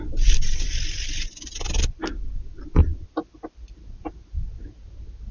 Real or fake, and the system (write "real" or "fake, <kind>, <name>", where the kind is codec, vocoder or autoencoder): real